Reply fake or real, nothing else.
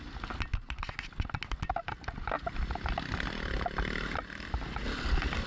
real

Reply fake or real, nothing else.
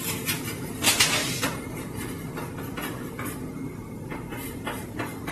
fake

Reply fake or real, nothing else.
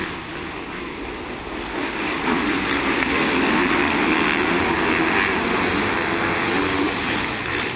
real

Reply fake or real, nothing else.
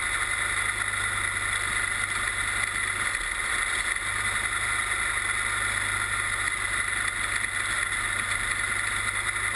real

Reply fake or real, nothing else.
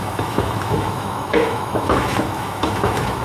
fake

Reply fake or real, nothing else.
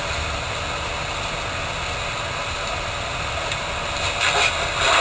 real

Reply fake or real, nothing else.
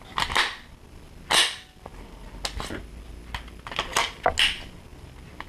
real